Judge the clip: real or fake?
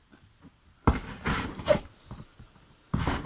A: real